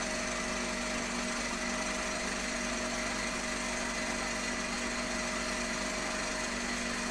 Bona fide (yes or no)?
yes